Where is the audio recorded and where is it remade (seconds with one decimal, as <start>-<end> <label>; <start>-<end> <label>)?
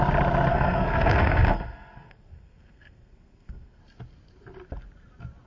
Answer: 0.0-0.5 recorded; 0.5-3.8 remade; 3.8-5.5 recorded